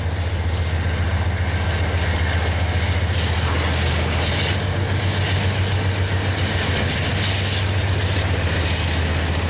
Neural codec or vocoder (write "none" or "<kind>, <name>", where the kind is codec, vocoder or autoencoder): none